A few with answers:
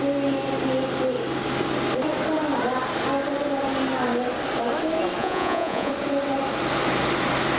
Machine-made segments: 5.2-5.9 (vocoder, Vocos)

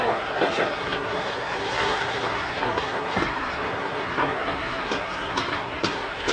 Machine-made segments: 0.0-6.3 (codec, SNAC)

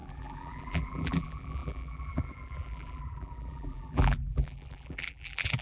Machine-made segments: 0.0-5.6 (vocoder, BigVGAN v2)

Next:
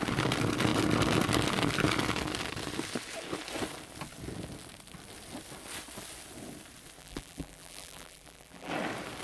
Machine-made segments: 7.0-8.7 (vocoder, BigVGAN v2)

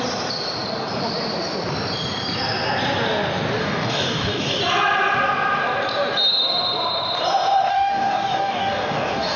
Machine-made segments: 3.6-4.6 (codec, DAC); 7.7-9.4